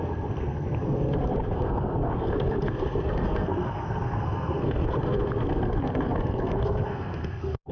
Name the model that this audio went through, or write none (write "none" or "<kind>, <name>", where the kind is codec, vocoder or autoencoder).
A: codec, SNAC